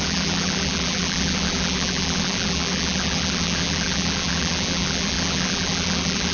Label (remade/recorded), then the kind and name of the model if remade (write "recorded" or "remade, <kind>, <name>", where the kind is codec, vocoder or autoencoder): remade, vocoder, BigVGAN v2